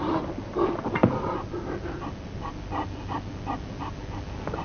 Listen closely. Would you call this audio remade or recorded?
recorded